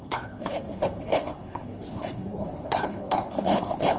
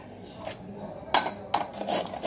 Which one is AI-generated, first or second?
first